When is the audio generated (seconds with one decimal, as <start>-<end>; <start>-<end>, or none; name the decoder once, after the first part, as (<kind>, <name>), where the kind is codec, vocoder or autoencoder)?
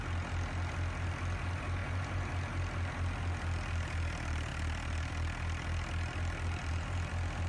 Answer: 1.8-2.3 (vocoder, BigVGAN v2); 6.6-7.1